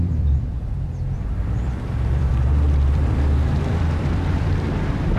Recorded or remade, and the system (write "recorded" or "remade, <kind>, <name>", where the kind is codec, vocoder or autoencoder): remade, vocoder, BigVGAN v2